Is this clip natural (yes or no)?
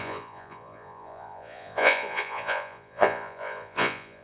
no